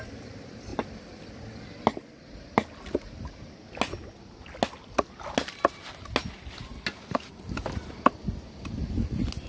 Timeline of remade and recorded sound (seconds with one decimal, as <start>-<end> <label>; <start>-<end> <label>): 0.0-9.5 recorded